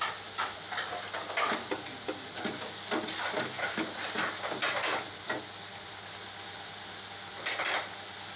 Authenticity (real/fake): real